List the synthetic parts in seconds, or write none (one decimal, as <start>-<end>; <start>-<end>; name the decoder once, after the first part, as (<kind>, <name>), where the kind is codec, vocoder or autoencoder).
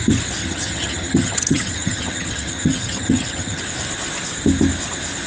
0.4-3.6 (vocoder, HiFi-GAN)